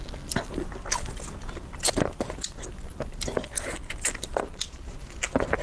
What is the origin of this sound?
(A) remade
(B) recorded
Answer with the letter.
B